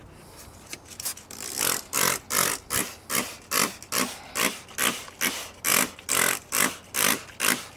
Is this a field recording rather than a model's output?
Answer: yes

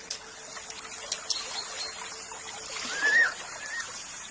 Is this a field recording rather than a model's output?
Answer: yes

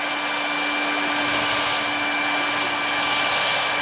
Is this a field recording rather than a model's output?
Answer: yes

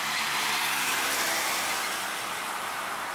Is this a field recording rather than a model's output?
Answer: no